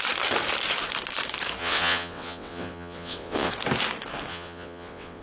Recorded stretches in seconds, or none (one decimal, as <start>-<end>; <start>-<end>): 0.0-1.6; 3.5-4.3